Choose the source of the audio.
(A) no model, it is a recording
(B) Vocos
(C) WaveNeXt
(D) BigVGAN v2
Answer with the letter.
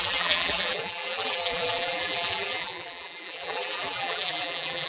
D